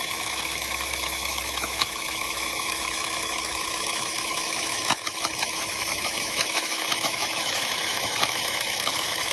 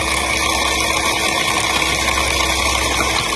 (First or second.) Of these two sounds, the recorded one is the second